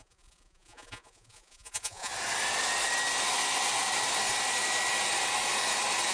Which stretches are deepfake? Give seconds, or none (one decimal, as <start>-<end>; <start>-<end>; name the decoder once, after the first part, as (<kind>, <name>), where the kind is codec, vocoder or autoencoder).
0.0-2.1 (vocoder, Vocos)